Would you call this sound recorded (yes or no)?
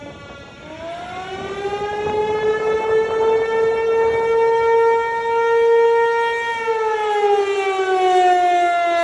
yes